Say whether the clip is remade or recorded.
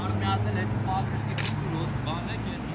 recorded